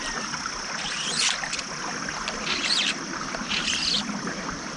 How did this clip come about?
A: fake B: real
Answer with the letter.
B